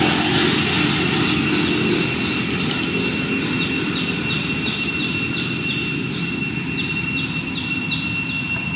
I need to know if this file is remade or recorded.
recorded